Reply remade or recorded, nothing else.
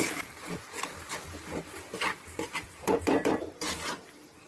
remade